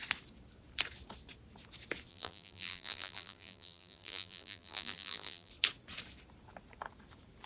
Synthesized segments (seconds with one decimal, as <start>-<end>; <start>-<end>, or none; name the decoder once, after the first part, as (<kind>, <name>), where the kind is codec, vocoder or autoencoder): 2.1-5.5 (vocoder, BigVGAN v2)